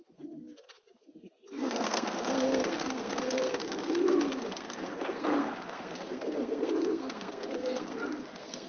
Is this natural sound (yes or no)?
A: no